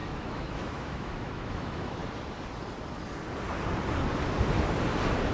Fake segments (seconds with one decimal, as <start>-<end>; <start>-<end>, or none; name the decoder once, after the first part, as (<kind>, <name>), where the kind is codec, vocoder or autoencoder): 0.0-2.0 (autoencoder, DAC-VAE)